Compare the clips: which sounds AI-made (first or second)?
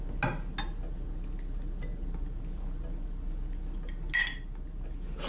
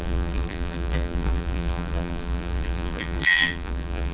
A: second